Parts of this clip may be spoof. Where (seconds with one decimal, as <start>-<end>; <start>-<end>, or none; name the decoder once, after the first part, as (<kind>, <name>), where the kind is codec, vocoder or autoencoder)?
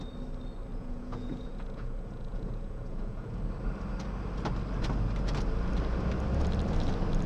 0.7-3.4 (vocoder, Vocos)